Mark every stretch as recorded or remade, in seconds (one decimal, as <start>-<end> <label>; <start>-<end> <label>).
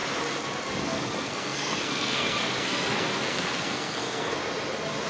0.0-0.8 recorded; 0.8-4.4 remade; 4.4-5.1 recorded